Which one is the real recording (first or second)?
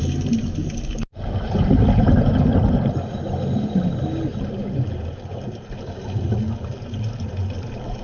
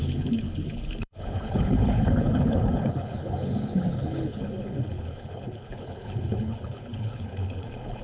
first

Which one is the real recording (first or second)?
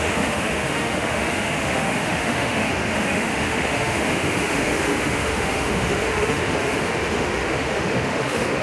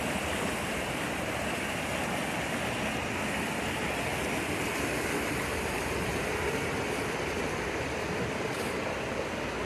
second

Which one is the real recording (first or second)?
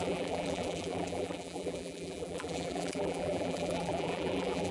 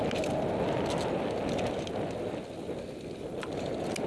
second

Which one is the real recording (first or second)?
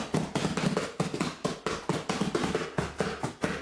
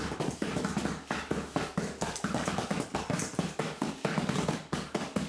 first